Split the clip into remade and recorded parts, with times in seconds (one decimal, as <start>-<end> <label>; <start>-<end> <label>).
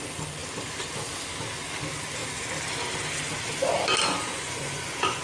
0.0-4.3 recorded; 4.3-5.2 remade